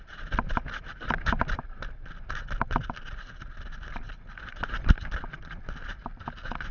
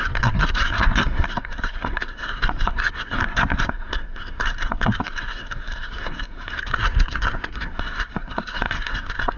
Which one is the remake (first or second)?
second